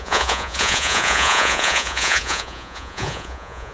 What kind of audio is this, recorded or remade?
remade